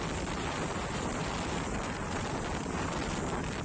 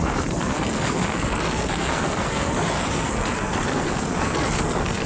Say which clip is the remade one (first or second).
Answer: second